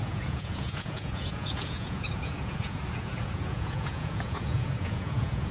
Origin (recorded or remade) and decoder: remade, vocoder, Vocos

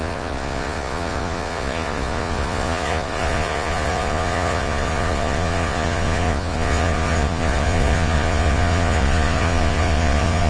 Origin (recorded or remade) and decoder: remade, vocoder, Vocos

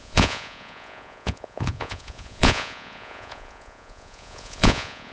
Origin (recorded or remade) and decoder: remade, vocoder, Vocos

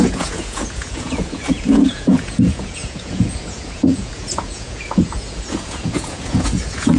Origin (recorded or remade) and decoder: remade, vocoder, Vocos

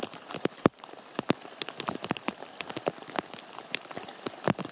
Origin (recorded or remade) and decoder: recorded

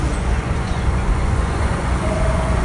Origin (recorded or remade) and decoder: remade, vocoder, Vocos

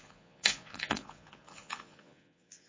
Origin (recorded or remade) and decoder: remade, vocoder, Vocos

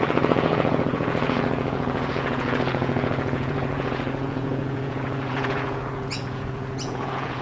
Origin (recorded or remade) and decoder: remade, vocoder, Vocos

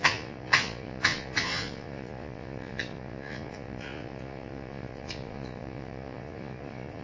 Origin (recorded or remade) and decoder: remade, vocoder, Vocos